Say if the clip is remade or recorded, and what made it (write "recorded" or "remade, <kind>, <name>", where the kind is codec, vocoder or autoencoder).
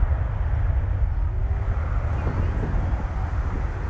recorded